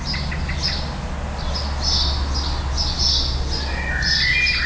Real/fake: real